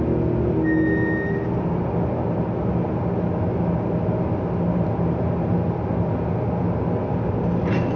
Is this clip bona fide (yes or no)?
yes